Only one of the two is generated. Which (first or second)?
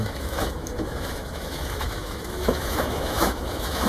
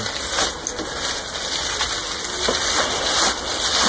first